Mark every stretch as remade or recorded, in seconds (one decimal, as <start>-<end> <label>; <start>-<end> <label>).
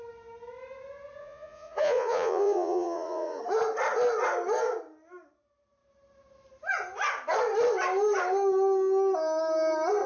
0.0-1.2 recorded; 1.2-3.4 remade; 3.4-10.1 recorded